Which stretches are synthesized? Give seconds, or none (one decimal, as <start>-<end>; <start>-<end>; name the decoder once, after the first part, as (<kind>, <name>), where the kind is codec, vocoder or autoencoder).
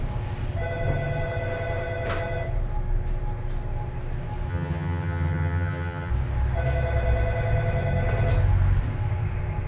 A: 4.5-6.1 (vocoder, HiFi-GAN)